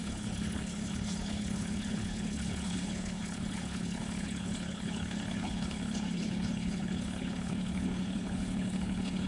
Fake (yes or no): yes